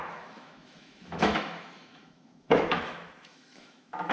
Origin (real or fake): fake